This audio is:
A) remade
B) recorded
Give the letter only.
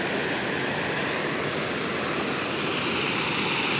B